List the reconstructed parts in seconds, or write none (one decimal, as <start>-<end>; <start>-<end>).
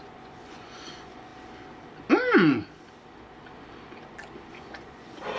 0.0-1.3; 4.5-5.4